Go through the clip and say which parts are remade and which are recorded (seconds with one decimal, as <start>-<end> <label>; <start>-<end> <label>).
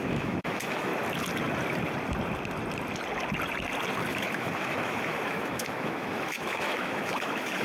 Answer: 0.0-0.9 remade; 0.9-4.1 recorded; 4.1-7.6 remade